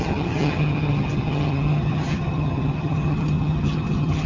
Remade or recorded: remade